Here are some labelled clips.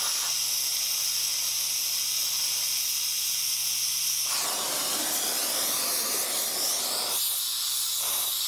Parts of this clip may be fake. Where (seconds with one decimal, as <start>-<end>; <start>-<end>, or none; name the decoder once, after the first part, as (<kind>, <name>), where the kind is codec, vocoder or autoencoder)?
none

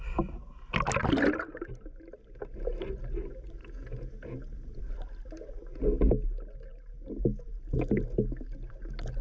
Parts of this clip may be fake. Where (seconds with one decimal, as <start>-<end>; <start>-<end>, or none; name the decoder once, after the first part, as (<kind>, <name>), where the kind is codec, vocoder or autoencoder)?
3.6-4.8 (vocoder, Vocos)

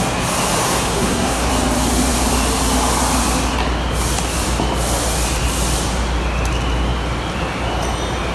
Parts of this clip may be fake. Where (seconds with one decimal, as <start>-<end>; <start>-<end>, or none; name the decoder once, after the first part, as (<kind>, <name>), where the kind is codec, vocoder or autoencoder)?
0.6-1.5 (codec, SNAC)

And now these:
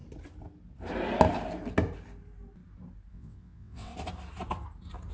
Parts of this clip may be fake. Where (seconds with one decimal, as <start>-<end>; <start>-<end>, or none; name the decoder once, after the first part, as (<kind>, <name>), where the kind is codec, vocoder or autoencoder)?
3.1-3.9 (vocoder, WaveNeXt)

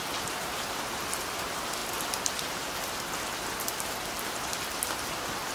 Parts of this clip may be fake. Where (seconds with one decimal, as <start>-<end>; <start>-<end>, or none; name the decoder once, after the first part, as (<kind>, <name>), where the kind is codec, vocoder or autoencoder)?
none

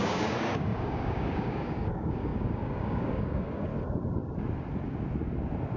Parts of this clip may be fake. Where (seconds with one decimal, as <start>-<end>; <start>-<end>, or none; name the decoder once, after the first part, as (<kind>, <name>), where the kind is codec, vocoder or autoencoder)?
0.0-3.7 (codec, DAC)

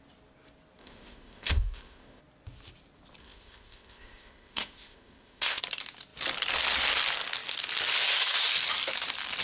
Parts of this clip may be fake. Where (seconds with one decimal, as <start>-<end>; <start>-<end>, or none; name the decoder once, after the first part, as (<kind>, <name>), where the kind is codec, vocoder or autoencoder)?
0.8-2.2 (codec, ZipCodec); 3.2-5.6